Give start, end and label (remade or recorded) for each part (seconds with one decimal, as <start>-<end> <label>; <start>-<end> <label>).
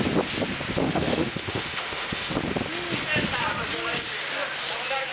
0.0-0.8 recorded; 0.8-2.3 remade; 2.3-5.1 recorded